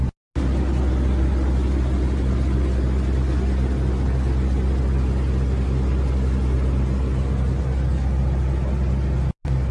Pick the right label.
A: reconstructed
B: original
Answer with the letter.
B